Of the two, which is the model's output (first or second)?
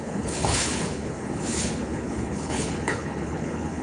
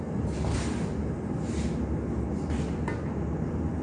first